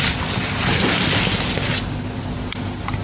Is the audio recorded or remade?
recorded